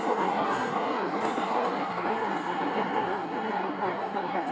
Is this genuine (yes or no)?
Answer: no